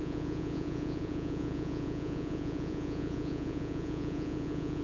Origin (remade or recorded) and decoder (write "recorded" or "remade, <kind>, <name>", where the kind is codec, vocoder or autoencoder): remade, vocoder, Vocos